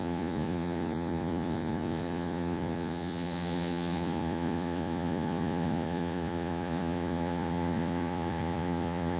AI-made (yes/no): yes